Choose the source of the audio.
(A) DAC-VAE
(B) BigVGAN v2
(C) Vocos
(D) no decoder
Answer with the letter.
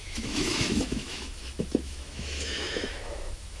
A